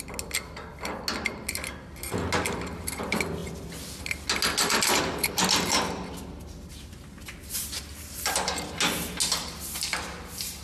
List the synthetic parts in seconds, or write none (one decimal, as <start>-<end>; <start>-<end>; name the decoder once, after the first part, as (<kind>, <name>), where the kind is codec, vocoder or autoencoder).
6.7-8.2 (vocoder, BigVGAN v2)